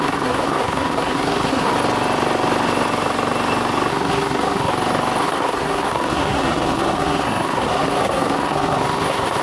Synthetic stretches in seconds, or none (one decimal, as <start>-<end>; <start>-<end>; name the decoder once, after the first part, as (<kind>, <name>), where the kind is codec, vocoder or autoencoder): 0.0-1.7 (codec, SNAC); 3.9-4.7; 5.2-9.4